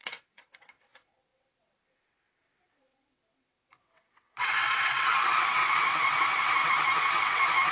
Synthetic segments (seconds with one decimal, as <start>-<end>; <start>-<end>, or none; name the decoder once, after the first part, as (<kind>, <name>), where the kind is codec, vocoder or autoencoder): 0.0-7.7 (vocoder, WaveNeXt)